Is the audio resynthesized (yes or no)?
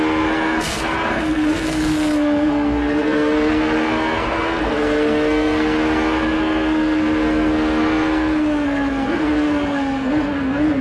yes